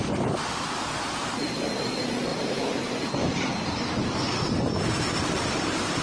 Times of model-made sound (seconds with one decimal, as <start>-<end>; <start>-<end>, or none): 2.3-6.0